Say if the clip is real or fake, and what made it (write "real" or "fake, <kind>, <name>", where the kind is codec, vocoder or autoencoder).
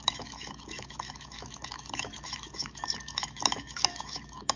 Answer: fake, autoencoder, DAC-VAE